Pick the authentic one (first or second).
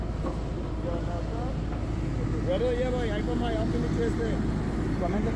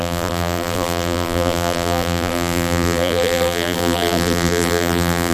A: first